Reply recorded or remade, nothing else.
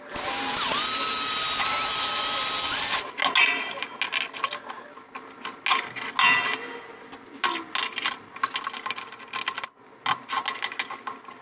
recorded